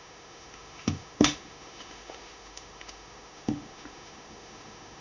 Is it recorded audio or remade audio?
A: remade